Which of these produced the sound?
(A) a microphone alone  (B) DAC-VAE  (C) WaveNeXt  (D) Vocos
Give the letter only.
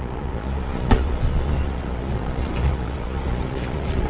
D